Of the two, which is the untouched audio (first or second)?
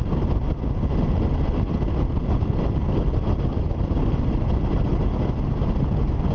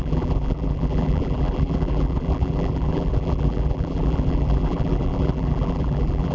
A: first